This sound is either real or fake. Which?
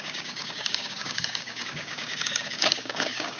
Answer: fake